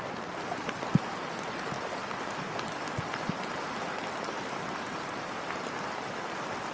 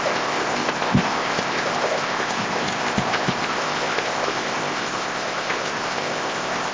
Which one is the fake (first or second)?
second